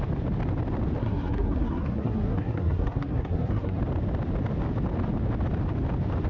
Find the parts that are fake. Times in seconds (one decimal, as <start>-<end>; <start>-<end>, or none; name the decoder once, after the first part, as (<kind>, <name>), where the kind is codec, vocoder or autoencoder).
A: 1.0-3.8 (codec, SNAC)